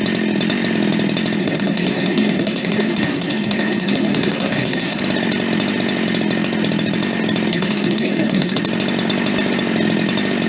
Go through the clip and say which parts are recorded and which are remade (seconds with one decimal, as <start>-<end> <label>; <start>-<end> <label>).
0.0-1.4 recorded; 1.4-5.0 remade; 5.0-7.5 recorded; 7.5-8.6 remade; 8.6-10.5 recorded